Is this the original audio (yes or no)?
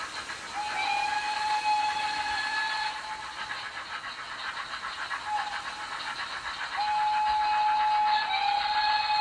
yes